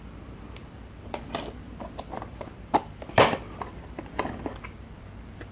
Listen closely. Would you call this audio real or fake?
fake